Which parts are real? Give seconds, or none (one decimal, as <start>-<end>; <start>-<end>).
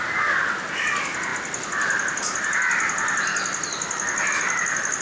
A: 0.0-5.0